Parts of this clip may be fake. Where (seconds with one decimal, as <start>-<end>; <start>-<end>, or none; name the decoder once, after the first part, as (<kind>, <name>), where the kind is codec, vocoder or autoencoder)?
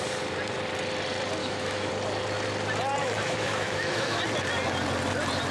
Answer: 1.4-1.9 (autoencoder, DAC-VAE); 3.0-4.2